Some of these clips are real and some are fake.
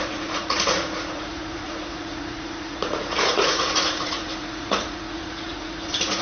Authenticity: fake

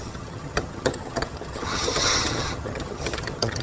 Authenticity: fake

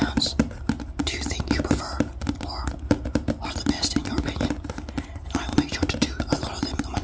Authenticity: real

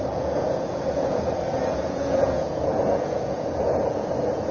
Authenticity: fake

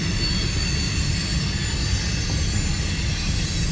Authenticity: real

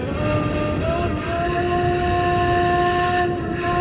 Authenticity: real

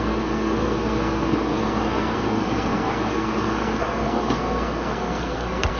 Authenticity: fake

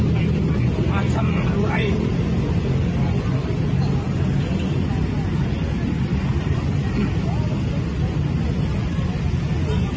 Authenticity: real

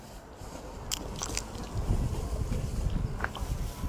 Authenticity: real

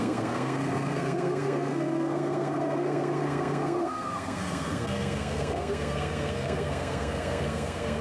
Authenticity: fake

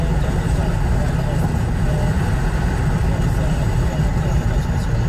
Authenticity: real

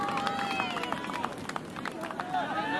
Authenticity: real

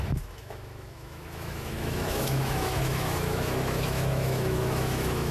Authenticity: fake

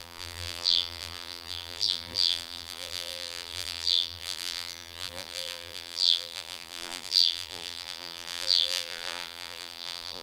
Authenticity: fake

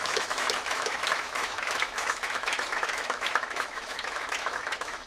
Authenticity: fake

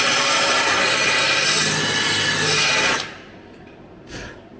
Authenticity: real